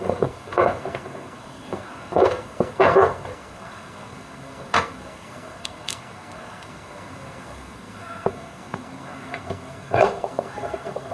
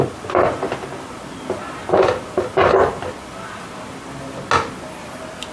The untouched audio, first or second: second